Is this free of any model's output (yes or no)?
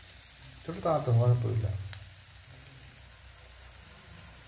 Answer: yes